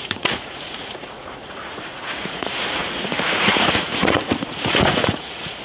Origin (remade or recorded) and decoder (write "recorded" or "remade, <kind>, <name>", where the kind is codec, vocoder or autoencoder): remade, vocoder, Vocos